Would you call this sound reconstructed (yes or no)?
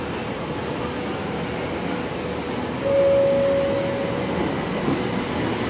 no